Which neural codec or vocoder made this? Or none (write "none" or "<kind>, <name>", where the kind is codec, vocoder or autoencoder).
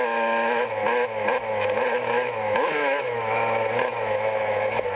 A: autoencoder, DAC-VAE